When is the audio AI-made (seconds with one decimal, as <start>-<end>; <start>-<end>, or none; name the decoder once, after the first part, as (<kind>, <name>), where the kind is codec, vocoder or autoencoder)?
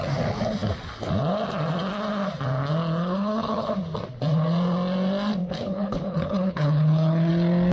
3.0-3.8 (codec, HILCodec); 5.4-7.3